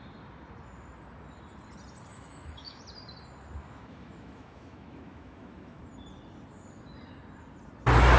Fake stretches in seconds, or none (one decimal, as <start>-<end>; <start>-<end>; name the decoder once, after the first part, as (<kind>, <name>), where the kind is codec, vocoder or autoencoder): 2.1-2.8 (autoencoder, DAC-VAE); 3.6-5.8